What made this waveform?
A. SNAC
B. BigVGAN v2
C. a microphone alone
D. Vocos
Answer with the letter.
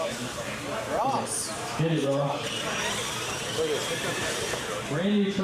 B